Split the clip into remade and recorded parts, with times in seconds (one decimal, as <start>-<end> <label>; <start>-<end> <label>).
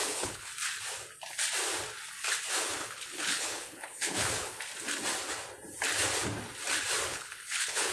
0.0-0.5 remade; 0.5-2.8 recorded; 2.8-4.6 remade; 4.6-7.1 recorded; 7.1-7.9 remade